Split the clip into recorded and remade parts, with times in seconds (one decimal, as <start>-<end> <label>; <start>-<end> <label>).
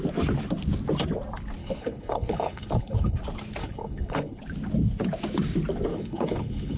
0.0-1.6 recorded; 1.6-3.2 remade; 3.2-3.6 recorded; 3.6-4.4 remade; 4.4-5.9 recorded; 5.9-6.8 remade